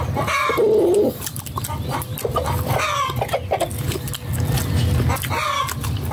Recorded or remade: recorded